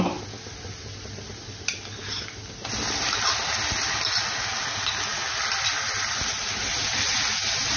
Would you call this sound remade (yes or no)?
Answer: no